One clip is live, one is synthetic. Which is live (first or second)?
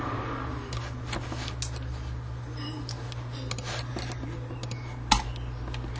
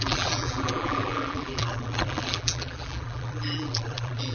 first